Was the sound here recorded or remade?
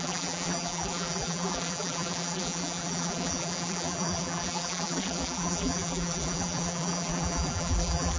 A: remade